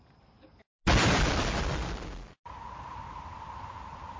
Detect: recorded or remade recorded